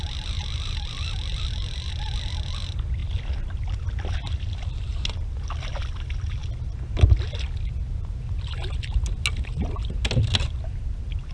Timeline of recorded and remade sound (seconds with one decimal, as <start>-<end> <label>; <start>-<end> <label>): 0.0-11.3 recorded